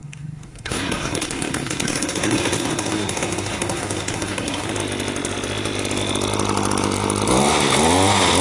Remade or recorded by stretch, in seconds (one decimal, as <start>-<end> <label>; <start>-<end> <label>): 0.0-4.7 remade; 4.7-8.4 recorded